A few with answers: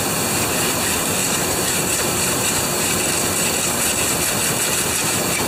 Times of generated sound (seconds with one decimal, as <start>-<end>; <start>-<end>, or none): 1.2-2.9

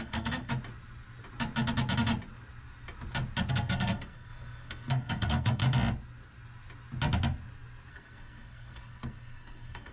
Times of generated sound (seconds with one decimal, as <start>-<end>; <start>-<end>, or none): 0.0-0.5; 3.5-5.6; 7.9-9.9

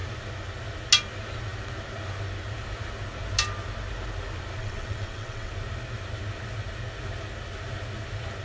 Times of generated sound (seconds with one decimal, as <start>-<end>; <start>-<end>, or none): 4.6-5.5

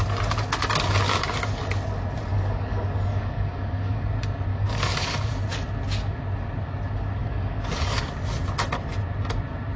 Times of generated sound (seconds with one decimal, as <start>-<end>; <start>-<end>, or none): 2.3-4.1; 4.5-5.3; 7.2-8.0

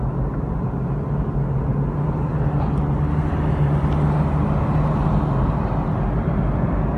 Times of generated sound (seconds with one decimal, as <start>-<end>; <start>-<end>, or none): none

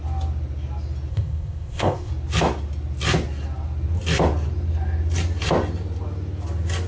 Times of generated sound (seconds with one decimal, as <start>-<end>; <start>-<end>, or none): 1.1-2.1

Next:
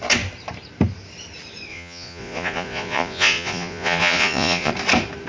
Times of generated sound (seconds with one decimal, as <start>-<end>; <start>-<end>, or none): 1.7-4.7

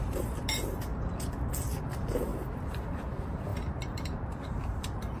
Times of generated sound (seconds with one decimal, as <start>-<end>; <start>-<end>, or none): 0.0-0.9; 1.8-2.3; 2.9-5.2